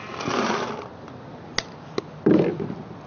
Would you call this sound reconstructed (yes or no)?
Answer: no